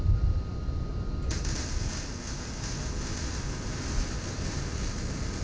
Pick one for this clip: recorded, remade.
recorded